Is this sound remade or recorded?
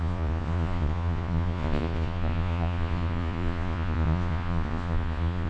remade